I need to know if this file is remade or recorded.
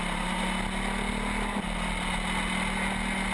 recorded